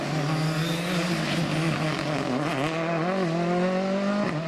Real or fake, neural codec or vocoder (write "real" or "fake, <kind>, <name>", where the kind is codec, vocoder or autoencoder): real